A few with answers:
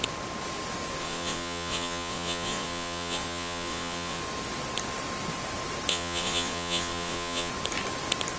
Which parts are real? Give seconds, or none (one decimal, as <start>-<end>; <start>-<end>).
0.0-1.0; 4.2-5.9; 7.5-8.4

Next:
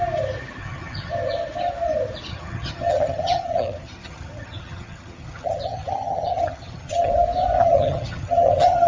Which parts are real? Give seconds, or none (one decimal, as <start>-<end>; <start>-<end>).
0.0-0.6; 1.1-2.3; 7.1-7.6

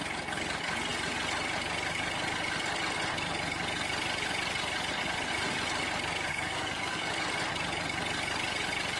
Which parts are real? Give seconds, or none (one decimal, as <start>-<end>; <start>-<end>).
0.0-6.3; 7.1-9.0

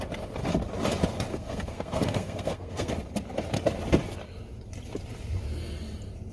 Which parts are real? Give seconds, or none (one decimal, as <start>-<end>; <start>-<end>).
0.0-1.3; 2.9-6.3